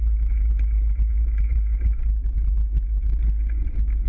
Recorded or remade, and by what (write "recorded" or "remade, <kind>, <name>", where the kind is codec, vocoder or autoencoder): recorded